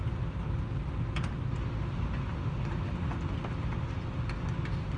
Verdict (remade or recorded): recorded